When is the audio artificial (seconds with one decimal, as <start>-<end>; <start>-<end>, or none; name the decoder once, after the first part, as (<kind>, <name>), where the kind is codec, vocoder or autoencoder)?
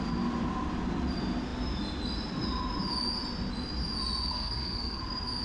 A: 4.3-5.0 (codec, SNAC)